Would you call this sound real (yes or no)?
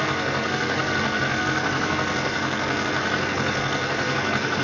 no